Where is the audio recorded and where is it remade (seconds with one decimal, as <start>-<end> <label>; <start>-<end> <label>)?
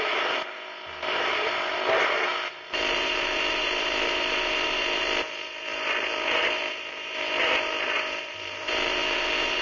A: 0.0-9.6 remade